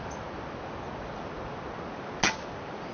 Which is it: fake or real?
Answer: real